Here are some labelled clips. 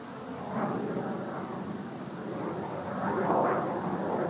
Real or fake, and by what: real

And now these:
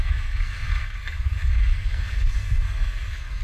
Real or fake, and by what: fake, codec, SNAC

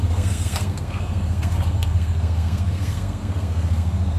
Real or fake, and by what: fake, codec, SNAC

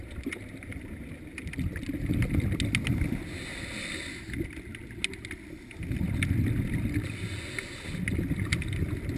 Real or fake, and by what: real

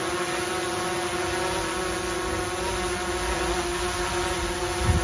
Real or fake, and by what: real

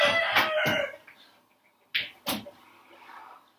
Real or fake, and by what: real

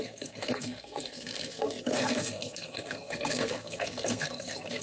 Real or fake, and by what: fake, codec, SNAC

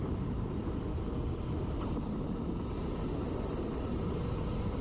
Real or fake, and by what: real